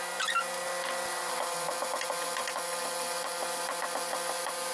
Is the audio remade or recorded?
recorded